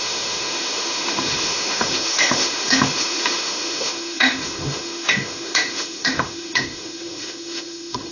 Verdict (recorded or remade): remade